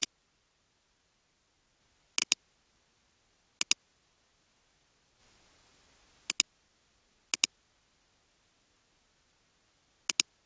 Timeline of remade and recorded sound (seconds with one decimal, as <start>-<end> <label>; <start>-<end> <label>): 0.0-10.5 recorded